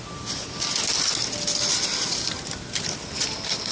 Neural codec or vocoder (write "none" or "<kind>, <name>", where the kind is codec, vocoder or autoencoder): none